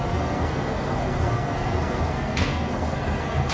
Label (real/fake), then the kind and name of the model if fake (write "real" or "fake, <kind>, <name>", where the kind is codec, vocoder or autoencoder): fake, codec, SNAC